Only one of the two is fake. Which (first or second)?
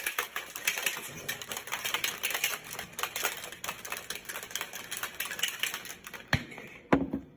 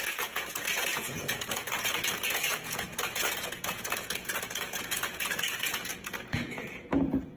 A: second